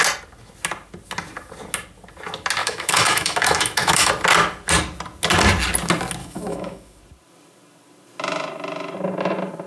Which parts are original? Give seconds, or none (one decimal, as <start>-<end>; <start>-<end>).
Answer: 0.0-2.6; 4.1-6.2; 7.0-9.7